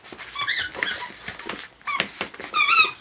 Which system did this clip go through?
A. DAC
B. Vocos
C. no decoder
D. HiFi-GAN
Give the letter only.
C